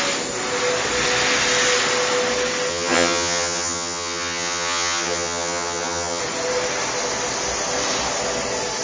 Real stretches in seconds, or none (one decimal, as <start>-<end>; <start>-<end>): 0.0-2.7; 6.2-8.8